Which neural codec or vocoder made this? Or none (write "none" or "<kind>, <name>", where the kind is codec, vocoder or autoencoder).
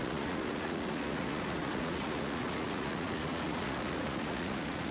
vocoder, Vocos